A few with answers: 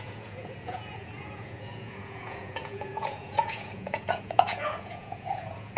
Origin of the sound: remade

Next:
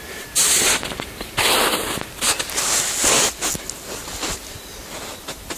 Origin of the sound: recorded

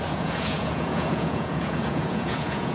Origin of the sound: remade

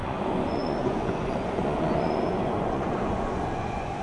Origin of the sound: remade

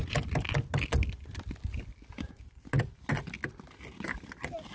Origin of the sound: recorded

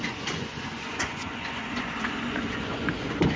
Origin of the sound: remade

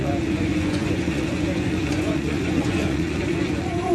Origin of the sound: remade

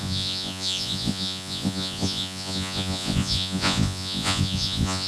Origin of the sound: remade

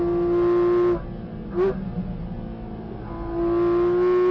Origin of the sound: recorded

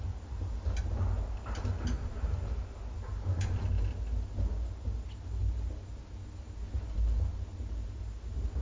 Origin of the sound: recorded